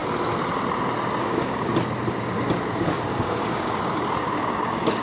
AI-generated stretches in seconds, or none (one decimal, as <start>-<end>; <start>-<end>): 1.2-1.7; 2.6-5.0